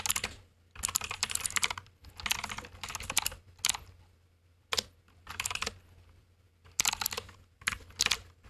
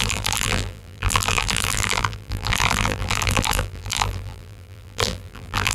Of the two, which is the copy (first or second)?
second